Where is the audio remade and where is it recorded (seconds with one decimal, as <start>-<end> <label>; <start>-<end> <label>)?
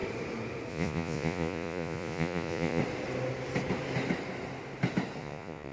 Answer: 0.0-0.7 recorded; 0.7-2.8 remade; 2.8-5.2 recorded; 5.2-5.7 remade